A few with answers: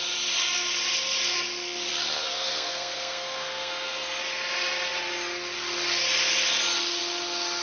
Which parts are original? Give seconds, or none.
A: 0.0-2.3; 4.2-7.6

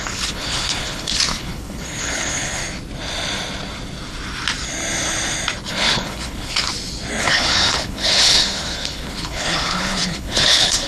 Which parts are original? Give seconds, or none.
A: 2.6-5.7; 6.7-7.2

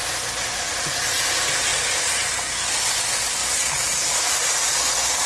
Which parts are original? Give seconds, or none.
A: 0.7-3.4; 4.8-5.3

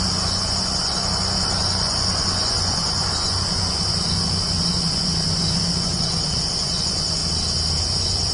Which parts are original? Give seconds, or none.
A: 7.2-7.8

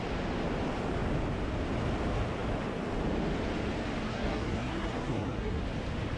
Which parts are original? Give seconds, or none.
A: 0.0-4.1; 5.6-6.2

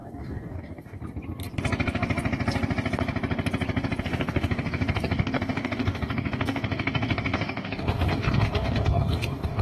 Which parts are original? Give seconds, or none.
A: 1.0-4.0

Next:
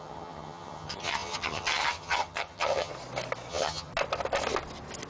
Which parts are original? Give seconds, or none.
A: 2.9-3.5; 3.9-5.1